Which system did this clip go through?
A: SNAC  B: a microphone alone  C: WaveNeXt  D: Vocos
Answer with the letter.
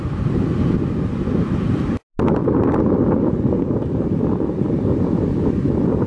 B